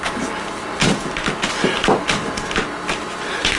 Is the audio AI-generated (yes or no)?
no